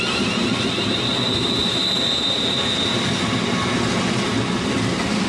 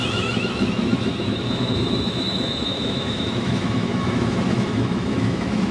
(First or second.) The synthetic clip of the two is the second